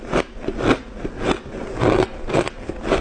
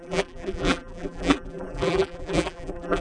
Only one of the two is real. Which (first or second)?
first